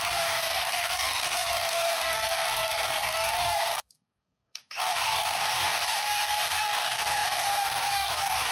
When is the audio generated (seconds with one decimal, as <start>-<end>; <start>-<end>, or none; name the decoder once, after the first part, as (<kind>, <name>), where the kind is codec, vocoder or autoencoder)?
0.0-8.5 (codec, DAC)